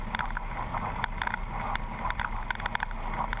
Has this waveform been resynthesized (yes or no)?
no